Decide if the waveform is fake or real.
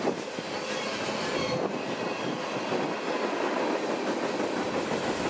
real